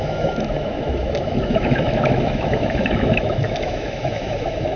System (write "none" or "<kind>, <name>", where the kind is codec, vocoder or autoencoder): autoencoder, DAC-VAE